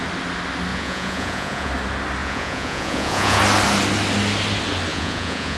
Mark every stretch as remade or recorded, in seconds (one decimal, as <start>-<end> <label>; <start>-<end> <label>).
0.0-0.7 recorded; 0.7-1.7 remade; 1.7-2.2 recorded; 2.2-3.4 remade; 3.4-4.9 recorded; 4.9-5.6 remade